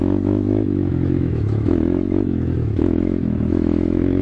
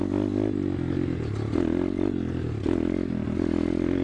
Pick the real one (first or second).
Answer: second